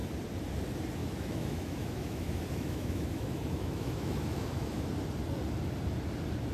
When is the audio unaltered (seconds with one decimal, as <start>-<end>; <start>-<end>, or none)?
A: 0.0-1.0; 4.9-6.5